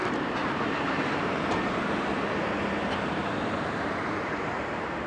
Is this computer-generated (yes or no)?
yes